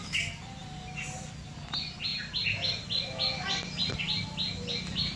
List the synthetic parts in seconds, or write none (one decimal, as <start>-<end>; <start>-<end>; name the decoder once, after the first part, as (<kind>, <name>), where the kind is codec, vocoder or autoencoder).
none

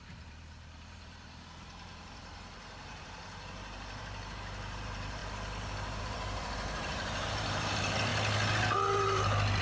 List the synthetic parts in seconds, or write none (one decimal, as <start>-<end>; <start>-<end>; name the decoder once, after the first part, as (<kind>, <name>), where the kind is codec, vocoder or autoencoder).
0.0-5.2 (vocoder, BigVGAN v2); 6.0-8.1

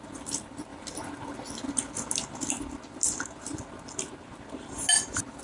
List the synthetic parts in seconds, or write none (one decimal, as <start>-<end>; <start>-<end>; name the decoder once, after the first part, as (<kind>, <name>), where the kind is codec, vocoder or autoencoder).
none

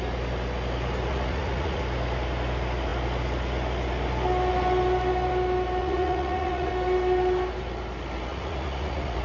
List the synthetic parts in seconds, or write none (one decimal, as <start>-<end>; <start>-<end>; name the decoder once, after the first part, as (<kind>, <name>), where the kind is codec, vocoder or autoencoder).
1.1-1.8 (vocoder, Vocos); 5.8-6.7; 8.3-9.2

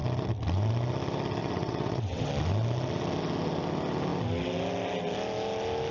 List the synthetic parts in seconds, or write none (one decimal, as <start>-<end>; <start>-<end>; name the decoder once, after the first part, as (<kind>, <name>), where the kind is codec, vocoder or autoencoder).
1.4-2.3 (vocoder, WaveNeXt)

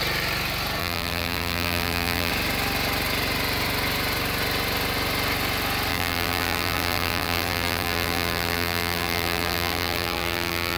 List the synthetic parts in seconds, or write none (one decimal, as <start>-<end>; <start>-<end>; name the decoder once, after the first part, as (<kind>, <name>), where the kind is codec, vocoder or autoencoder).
0.8-2.3 (vocoder, BigVGAN v2); 5.9-10.8

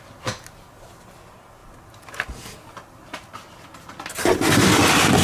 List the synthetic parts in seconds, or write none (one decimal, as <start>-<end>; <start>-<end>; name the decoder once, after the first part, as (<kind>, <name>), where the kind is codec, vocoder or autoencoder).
none

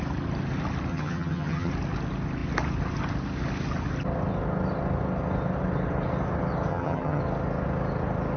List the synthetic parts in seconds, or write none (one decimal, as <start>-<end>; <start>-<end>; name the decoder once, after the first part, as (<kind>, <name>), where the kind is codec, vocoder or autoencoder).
0.9-1.7 (vocoder, HiFi-GAN); 6.7-7.2